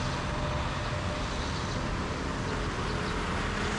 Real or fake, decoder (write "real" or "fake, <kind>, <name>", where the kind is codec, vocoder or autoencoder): real